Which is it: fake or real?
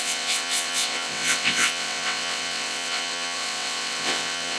fake